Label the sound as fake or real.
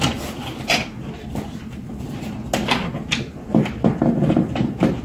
real